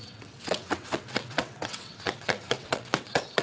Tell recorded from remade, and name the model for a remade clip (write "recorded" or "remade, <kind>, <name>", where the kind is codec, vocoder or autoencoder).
remade, vocoder, WaveNeXt